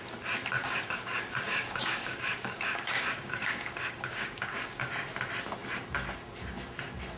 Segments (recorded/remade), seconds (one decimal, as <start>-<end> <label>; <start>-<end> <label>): 0.0-0.6 recorded; 0.6-4.9 remade; 4.9-7.2 recorded